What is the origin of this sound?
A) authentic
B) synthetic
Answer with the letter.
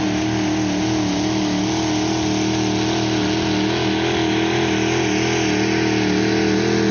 A